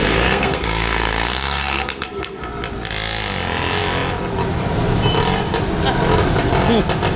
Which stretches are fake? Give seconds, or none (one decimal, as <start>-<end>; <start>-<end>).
0.0-2.4